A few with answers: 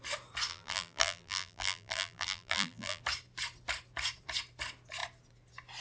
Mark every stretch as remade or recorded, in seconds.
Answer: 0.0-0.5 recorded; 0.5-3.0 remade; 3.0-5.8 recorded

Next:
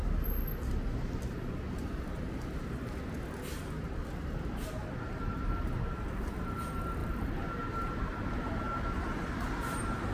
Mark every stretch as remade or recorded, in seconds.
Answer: 0.0-7.0 recorded; 7.0-7.6 remade; 7.6-10.1 recorded

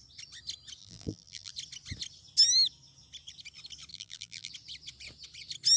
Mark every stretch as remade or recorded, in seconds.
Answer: 0.0-0.8 recorded; 0.8-1.5 remade; 1.5-3.9 recorded; 3.9-4.5 remade; 4.5-5.8 recorded